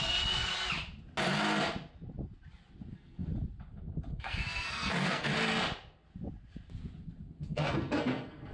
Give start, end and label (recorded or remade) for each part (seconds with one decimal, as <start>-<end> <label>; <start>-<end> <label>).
0.0-0.5 remade; 0.5-2.9 recorded; 2.9-3.3 remade; 3.3-4.1 recorded; 4.1-5.3 remade; 5.3-7.4 recorded; 7.4-8.5 remade